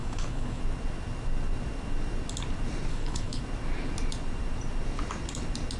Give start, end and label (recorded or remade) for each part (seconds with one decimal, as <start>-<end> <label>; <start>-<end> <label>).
0.0-0.6 remade; 0.6-2.9 recorded; 2.9-3.4 remade; 3.4-5.8 recorded